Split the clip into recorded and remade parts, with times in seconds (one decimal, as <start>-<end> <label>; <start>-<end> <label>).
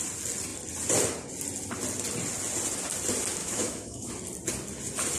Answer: 0.0-3.4 recorded; 3.4-4.1 remade; 4.1-5.2 recorded